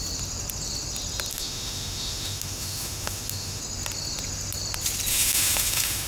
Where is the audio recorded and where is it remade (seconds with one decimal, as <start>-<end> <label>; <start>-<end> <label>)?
0.0-1.3 recorded; 1.3-3.6 remade; 3.6-5.1 recorded; 5.1-6.1 remade